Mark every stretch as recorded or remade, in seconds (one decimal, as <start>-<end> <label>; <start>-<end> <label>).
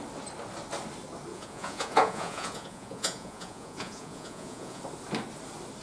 0.0-1.3 recorded; 1.3-4.8 remade; 4.8-5.8 recorded